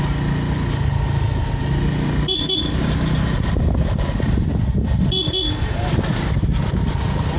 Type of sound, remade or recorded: recorded